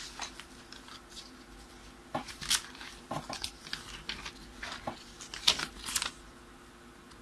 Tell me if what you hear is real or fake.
real